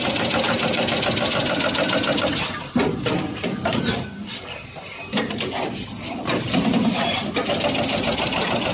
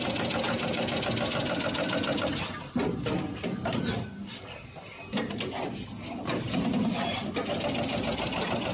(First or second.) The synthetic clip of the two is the first